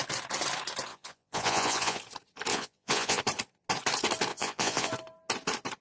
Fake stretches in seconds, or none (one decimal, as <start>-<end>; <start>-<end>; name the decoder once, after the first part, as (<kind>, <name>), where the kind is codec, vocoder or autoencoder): 0.9-2.0 (vocoder, Vocos); 2.5-3.2; 4.3-4.9